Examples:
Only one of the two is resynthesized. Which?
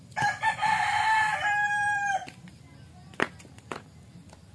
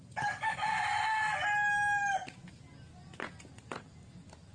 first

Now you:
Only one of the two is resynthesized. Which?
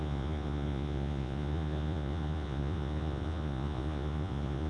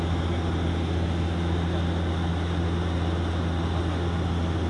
first